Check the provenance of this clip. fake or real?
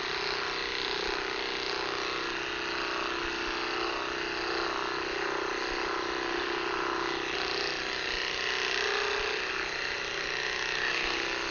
real